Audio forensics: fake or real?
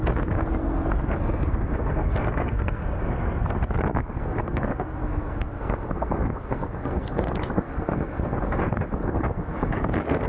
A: fake